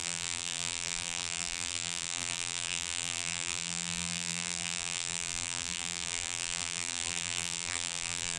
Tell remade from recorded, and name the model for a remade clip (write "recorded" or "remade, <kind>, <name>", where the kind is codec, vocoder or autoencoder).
remade, vocoder, BigVGAN v2